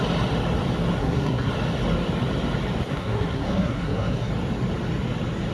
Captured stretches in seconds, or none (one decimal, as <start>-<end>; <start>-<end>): 0.0-1.0; 1.5-2.9; 4.3-5.5